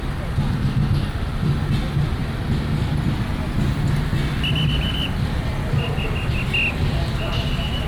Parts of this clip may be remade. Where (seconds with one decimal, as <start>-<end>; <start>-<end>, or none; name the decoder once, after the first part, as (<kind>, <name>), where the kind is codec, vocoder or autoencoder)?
none